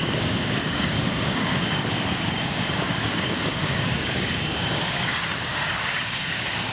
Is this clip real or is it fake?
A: fake